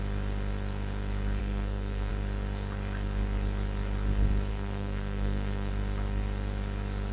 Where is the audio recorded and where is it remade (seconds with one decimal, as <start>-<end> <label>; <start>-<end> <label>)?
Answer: 0.0-1.4 recorded; 1.4-2.1 remade; 2.1-4.5 recorded; 4.5-5.7 remade; 5.7-7.1 recorded

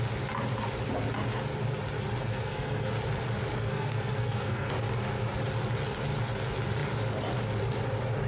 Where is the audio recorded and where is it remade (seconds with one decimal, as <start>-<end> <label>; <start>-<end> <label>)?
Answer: 0.0-2.2 recorded; 2.2-2.9 remade; 2.9-3.5 recorded; 3.5-4.7 remade; 4.7-8.3 recorded

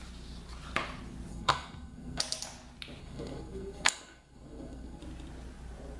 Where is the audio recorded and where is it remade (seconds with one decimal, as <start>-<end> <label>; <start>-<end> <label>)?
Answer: 0.0-1.3 recorded; 1.3-2.2 remade; 2.2-3.0 recorded; 3.0-5.0 remade; 5.0-6.0 recorded